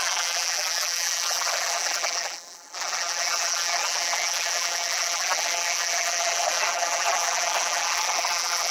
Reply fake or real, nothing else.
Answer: fake